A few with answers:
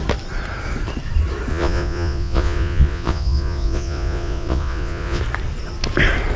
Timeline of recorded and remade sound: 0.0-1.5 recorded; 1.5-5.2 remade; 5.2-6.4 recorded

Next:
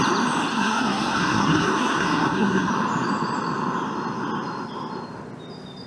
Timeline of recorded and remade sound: 0.0-0.5 recorded; 0.5-2.7 remade; 2.7-5.9 recorded